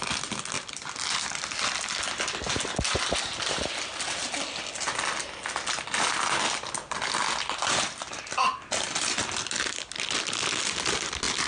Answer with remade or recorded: recorded